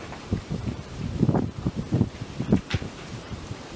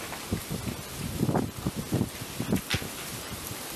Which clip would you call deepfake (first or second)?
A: first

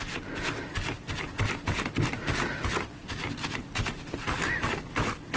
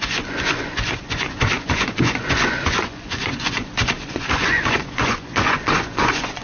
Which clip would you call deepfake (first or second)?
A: second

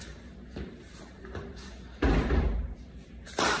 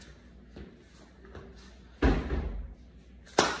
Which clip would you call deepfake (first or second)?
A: first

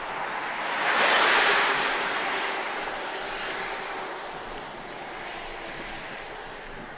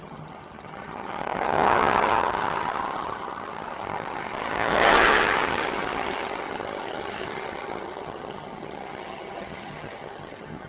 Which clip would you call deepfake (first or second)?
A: second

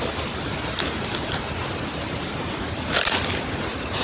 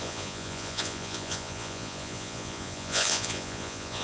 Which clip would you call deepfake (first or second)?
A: second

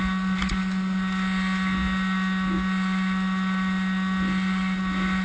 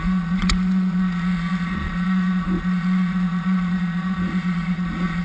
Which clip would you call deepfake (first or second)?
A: second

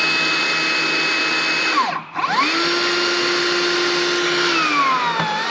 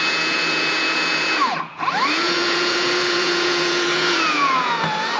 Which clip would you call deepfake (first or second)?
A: second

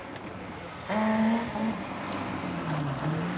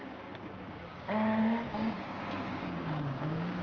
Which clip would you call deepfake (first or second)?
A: second